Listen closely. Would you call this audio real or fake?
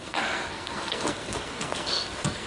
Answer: fake